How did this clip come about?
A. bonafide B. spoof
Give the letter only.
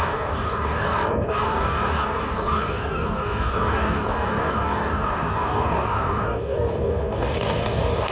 B